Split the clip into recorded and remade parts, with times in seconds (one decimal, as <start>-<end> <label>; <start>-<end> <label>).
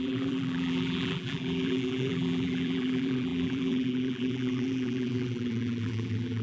0.0-6.4 remade